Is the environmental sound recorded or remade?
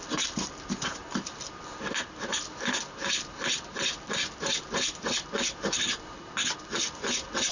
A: recorded